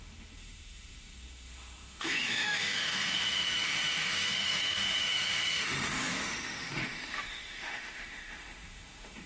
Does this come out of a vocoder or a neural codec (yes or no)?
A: yes